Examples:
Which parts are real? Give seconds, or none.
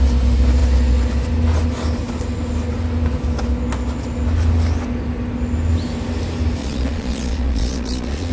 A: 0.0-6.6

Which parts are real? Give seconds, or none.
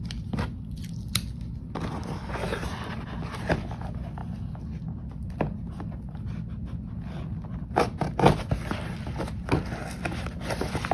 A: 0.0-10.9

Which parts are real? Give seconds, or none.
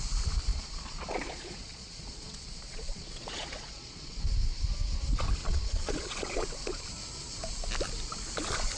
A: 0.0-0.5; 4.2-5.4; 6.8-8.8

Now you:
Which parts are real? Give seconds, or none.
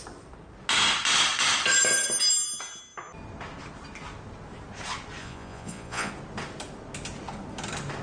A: 0.0-5.2; 6.1-8.0